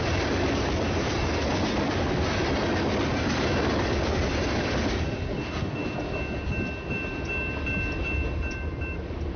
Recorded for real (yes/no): yes